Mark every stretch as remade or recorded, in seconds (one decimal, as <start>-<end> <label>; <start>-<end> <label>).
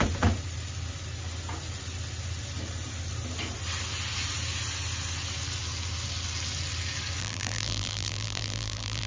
0.0-7.2 recorded; 7.2-9.1 remade